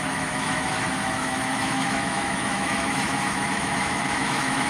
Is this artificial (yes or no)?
yes